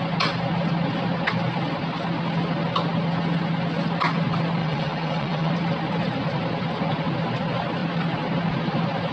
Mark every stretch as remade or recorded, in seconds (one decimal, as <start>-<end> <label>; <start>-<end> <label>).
0.0-4.6 recorded; 4.6-5.5 remade; 5.5-9.1 recorded